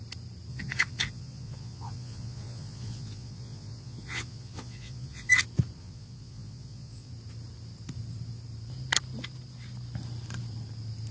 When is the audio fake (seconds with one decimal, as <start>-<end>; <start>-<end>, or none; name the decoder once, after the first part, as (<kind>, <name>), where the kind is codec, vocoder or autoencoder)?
0.5-5.3 (vocoder, Vocos); 5.8-7.1

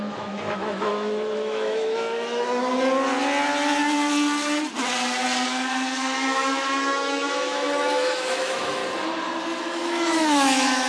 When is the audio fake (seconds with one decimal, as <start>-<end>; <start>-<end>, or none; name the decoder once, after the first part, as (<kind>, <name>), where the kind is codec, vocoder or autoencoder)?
0.0-2.6 (autoencoder, DAC-VAE); 5.9-8.8; 9.6-10.9

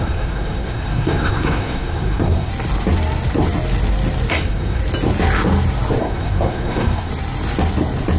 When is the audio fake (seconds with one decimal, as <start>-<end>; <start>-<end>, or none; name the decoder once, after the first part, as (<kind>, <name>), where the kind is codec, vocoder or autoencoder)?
0.0-2.5 (codec, SNAC); 4.3-4.8; 6.0-7.1

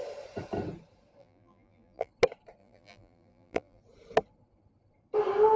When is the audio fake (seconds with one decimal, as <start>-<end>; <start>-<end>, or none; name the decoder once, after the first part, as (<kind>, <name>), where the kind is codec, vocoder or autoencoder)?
1.2-2.1 (vocoder, BigVGAN v2); 2.6-3.8

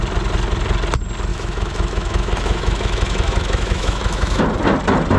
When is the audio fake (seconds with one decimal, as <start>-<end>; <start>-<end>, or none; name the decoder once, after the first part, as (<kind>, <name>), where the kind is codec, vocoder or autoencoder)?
1.3-4.4 (autoencoder, DAC-VAE)

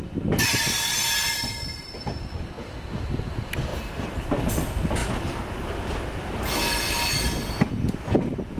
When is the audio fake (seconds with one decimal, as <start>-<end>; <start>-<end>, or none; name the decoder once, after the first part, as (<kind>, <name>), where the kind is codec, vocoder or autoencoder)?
none

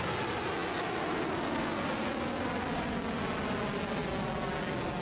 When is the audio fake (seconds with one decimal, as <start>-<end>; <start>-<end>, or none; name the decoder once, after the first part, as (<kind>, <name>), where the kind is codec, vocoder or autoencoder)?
none